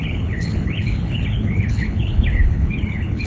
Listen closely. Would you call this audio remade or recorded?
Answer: remade